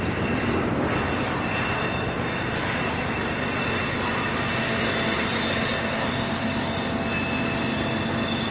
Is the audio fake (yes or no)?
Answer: no